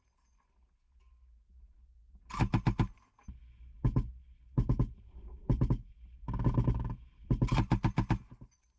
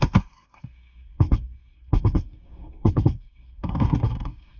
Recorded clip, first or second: first